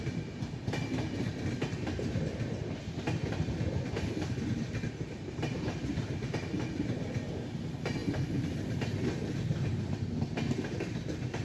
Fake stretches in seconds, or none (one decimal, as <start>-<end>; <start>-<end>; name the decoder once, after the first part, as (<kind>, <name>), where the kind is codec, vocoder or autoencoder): none